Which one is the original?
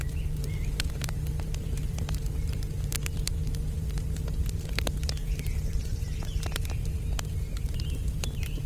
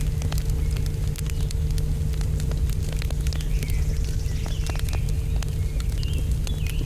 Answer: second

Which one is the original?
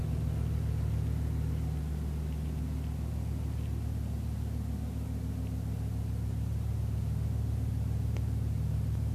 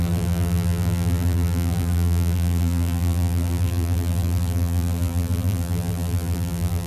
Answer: first